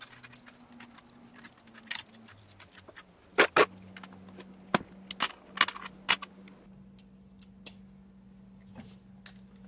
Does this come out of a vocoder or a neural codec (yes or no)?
no